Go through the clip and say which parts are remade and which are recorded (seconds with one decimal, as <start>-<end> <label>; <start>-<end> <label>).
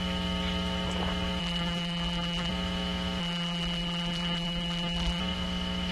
0.0-1.4 recorded; 1.4-2.5 remade; 2.5-3.2 recorded; 3.2-5.2 remade; 5.2-5.9 recorded